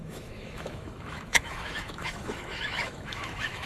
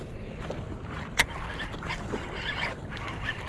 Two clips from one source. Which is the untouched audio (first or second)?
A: second